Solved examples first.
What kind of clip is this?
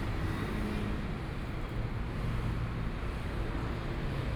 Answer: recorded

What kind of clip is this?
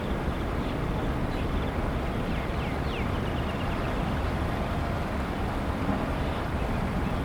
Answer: recorded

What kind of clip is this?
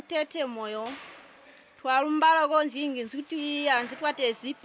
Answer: recorded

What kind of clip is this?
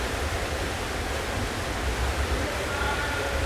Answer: remade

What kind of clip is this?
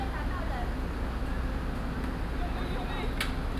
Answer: recorded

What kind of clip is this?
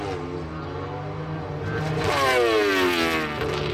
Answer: recorded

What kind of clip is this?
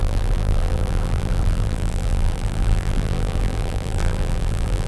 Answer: remade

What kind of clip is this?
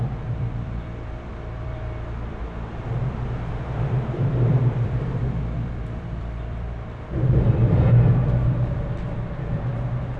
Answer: remade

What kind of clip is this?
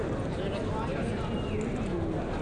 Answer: recorded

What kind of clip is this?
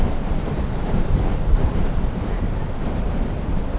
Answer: remade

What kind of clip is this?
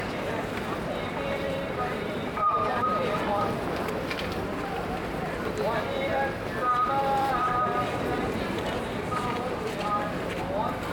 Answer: remade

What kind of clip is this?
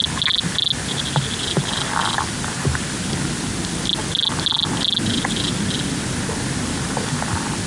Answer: recorded